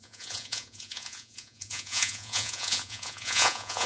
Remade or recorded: remade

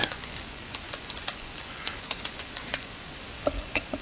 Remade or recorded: remade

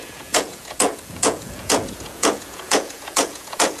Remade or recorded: remade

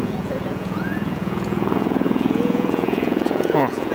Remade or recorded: remade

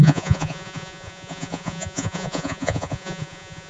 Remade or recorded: remade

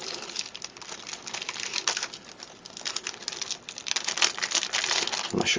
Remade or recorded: recorded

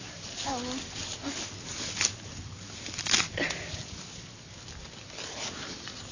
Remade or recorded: recorded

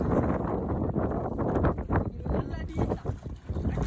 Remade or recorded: recorded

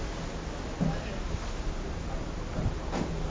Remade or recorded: recorded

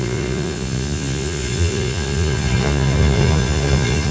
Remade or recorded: remade